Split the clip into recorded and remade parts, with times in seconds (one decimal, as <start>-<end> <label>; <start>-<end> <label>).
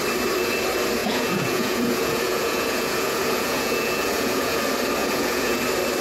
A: 0.0-1.0 recorded; 1.0-4.6 remade; 4.6-5.0 recorded; 5.0-5.6 remade; 5.6-6.0 recorded